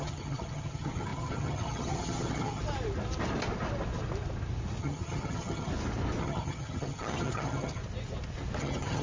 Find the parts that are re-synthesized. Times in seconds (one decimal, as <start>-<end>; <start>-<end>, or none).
0.0-2.6; 4.8-5.7; 6.2-7.8; 8.6-9.0